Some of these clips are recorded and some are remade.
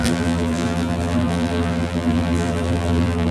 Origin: remade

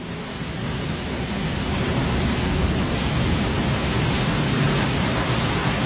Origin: remade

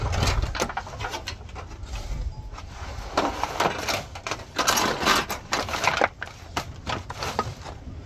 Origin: recorded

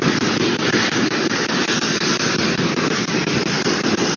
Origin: recorded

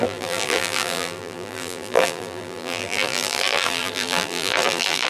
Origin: remade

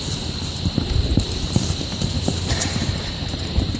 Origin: remade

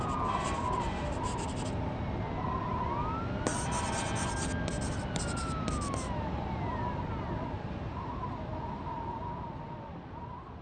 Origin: recorded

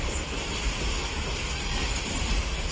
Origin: recorded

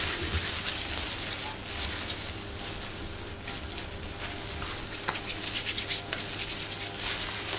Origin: recorded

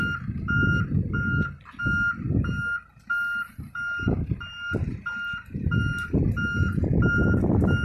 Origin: recorded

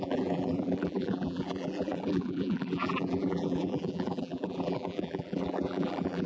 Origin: remade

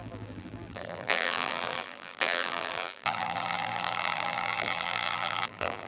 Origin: remade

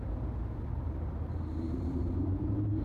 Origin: remade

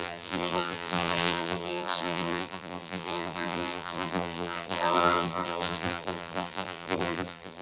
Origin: remade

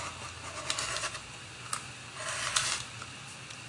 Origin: recorded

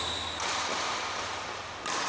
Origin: remade